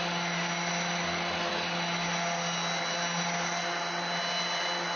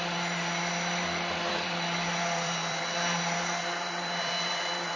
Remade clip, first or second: second